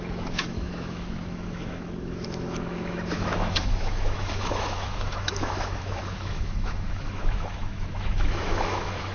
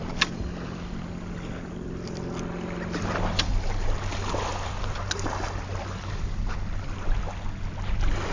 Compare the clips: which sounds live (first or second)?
second